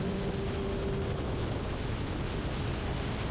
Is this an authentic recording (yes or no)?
yes